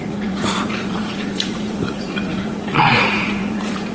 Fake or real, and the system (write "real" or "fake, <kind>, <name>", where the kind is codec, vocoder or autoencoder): fake, vocoder, Vocos